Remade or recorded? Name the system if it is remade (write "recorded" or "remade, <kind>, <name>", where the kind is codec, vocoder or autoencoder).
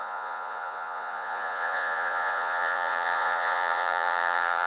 remade, vocoder, Vocos